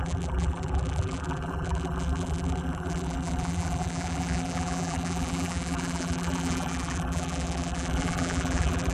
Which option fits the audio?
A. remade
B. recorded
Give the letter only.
A